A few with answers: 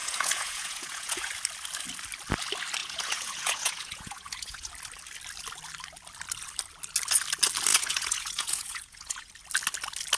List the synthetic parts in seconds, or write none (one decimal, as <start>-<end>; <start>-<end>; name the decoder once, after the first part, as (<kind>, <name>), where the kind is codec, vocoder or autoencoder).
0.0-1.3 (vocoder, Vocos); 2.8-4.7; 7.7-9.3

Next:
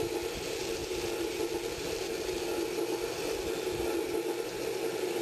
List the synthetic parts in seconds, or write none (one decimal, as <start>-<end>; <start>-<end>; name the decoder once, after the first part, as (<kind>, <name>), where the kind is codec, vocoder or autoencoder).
none

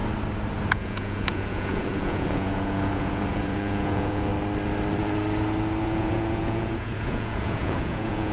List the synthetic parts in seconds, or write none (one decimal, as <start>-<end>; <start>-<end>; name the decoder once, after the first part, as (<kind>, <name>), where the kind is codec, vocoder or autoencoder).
0.7-4.3 (vocoder, Vocos); 5.8-8.3

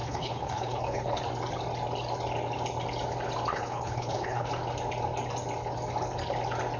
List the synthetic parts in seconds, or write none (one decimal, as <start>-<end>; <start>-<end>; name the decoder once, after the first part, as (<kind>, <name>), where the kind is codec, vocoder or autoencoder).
0.0-1.2 (codec, HILCodec); 3.5-4.5